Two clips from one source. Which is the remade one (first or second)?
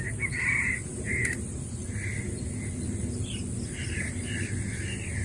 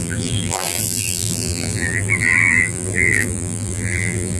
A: second